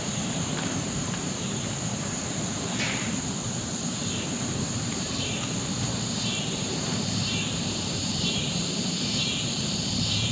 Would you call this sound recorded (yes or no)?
no